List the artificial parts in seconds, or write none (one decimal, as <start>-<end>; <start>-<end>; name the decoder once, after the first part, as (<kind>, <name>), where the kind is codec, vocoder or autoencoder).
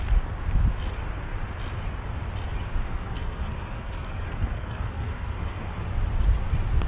2.8-5.8 (codec, SNAC)